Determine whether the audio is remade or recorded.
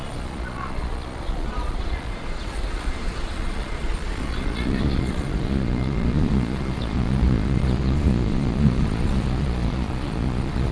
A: remade